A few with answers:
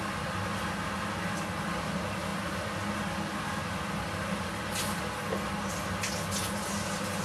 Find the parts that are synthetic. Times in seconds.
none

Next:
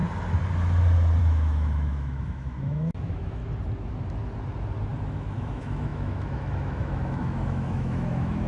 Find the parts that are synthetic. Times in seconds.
1.2-3.4; 5.1-8.5

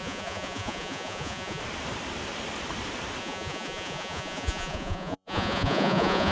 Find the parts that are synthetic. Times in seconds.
0.0-1.6; 3.2-6.3

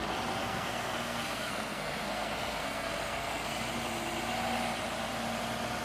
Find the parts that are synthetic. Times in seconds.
0.4-3.7

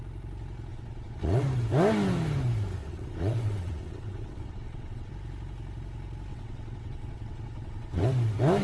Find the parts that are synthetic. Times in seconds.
0.7-1.4; 2.8-5.1; 6.3-8.0

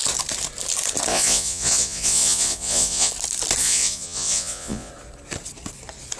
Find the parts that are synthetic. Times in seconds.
1.1-3.1; 3.6-4.9

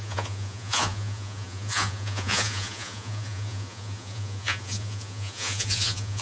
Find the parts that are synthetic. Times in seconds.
0.0-6.2